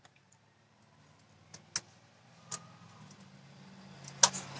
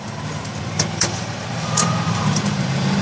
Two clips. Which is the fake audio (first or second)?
second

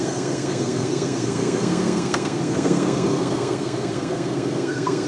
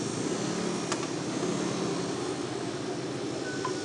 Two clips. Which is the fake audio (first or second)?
first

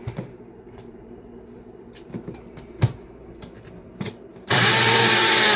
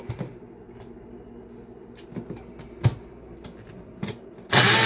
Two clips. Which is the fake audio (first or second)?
first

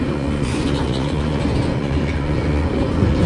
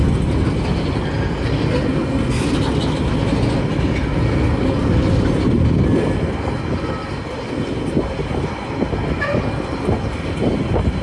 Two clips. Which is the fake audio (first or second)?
first